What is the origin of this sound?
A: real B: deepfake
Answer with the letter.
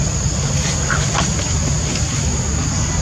A